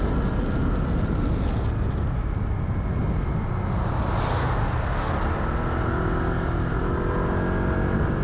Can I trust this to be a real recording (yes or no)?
yes